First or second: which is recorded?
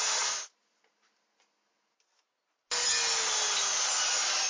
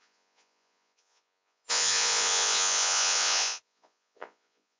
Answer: first